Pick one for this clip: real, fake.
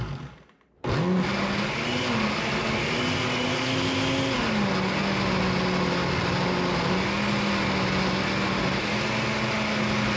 real